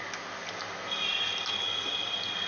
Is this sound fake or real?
real